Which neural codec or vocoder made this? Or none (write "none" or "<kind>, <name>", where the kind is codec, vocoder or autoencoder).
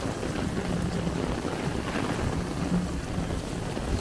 none